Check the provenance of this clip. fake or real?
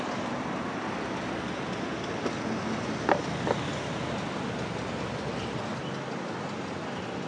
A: real